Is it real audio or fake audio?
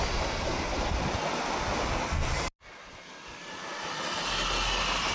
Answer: real